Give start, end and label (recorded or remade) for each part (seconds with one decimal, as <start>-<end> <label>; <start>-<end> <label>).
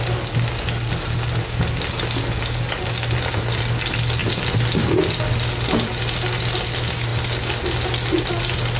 0.0-8.8 recorded